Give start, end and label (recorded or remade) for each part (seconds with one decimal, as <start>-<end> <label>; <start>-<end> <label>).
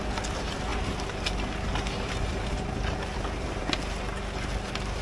0.0-5.0 recorded